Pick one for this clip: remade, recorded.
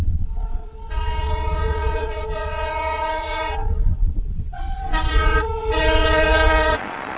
remade